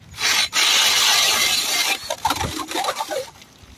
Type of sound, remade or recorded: recorded